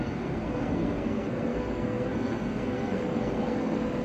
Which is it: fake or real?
fake